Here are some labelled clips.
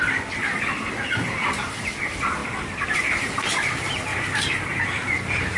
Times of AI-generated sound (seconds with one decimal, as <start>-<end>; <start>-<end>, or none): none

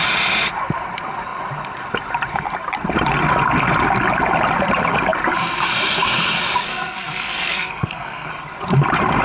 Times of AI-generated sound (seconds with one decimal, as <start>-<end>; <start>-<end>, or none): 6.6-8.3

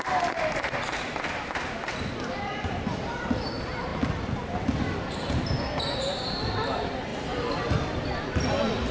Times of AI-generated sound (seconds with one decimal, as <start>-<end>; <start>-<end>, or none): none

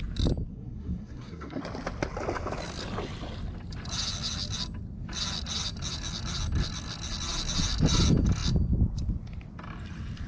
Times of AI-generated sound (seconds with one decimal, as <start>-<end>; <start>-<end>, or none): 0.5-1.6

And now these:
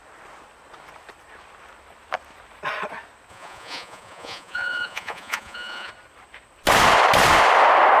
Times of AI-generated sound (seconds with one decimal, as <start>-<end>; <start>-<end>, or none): 3.3-5.9

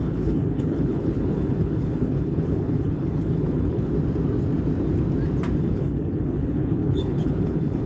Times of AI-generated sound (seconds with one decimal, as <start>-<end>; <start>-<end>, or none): 0.0-3.9; 5.6-7.9